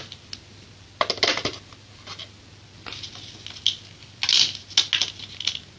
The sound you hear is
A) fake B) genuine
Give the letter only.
B